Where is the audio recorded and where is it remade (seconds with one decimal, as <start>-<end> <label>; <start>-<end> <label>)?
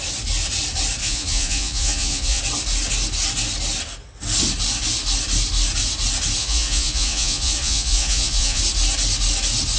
0.0-1.0 recorded; 1.0-2.4 remade; 2.4-6.4 recorded; 6.4-8.6 remade; 8.6-9.8 recorded